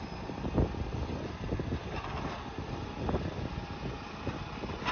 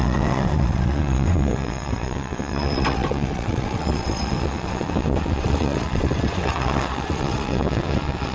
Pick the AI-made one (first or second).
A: second